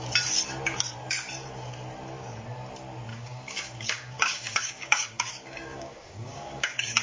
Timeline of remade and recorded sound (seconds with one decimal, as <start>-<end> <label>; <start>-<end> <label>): 0.0-3.1 recorded; 3.1-7.0 remade